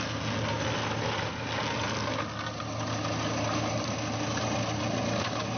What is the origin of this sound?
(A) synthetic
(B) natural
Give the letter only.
B